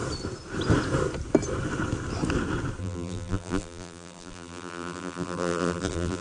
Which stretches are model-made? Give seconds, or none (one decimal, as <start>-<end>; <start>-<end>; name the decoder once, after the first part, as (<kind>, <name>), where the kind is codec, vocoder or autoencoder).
2.8-6.2 (vocoder, BigVGAN v2)